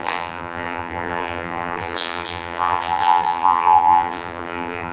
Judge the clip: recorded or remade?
remade